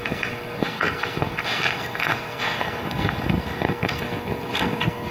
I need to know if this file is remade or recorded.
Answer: remade